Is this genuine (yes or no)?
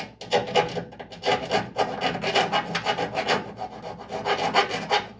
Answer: yes